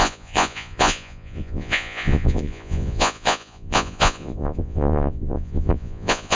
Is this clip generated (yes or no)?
yes